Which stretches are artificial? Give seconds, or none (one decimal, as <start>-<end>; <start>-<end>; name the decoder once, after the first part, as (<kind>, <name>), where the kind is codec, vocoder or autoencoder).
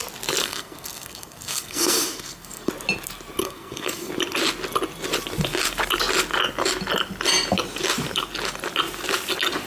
0.4-2.7 (codec, SNAC); 3.4-4.1